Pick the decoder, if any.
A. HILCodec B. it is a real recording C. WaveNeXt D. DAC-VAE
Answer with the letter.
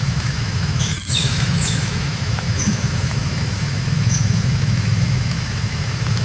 D